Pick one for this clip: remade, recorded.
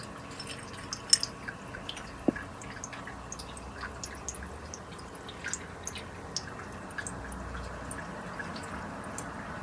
recorded